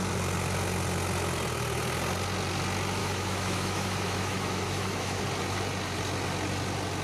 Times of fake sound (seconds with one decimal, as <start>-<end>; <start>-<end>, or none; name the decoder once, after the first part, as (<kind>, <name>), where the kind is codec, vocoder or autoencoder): 3.0-5.2 (autoencoder, DAC-VAE)